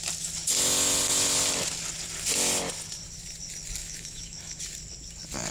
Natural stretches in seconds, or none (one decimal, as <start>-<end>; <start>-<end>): 0.0-3.8; 4.6-5.5

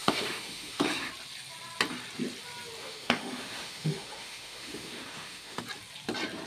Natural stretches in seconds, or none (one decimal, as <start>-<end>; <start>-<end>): 1.1-2.8; 5.6-6.5

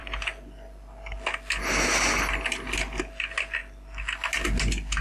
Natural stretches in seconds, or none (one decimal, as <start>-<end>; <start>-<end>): 0.0-5.0